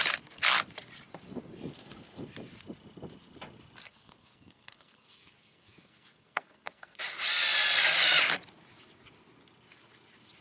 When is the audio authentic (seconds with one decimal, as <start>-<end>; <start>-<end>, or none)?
0.0-3.8; 7.0-10.4